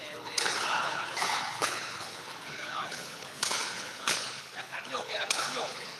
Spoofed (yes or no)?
yes